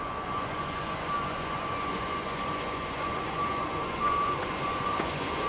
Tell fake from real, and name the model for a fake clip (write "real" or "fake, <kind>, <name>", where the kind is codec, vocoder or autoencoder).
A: fake, vocoder, Vocos